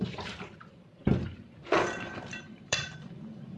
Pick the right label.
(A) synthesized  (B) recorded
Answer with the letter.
A